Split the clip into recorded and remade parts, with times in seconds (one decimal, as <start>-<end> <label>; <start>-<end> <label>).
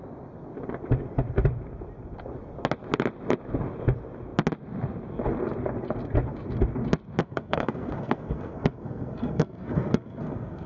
0.0-7.2 recorded; 7.2-10.7 remade